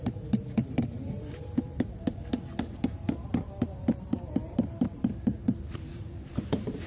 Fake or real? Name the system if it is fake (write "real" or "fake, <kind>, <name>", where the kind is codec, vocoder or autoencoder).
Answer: fake, vocoder, BigVGAN v2